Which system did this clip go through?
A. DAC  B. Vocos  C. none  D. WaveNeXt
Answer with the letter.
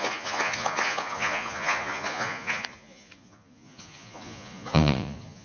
B